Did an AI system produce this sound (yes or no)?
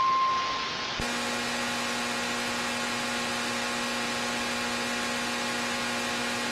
no